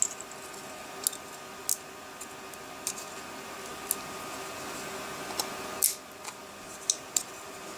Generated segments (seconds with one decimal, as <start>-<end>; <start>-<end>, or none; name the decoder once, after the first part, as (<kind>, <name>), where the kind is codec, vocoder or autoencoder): none